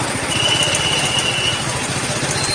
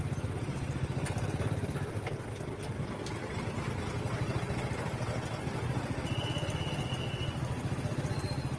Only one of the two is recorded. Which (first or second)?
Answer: second